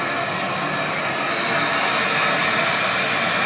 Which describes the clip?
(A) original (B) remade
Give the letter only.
A